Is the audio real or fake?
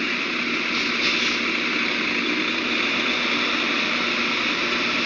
real